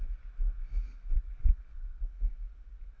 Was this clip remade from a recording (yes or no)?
no